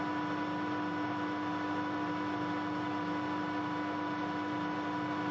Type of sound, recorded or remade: recorded